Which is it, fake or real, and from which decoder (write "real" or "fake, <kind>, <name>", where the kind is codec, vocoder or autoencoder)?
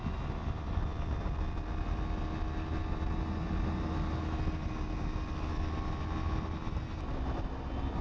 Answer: real